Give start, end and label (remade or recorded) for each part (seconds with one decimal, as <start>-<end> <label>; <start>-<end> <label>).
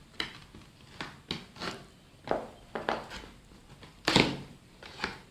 0.0-5.3 recorded